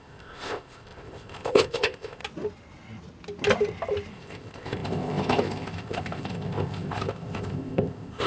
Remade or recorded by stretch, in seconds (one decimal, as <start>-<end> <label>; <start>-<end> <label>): 0.0-2.2 remade; 2.2-4.1 recorded; 4.1-8.3 remade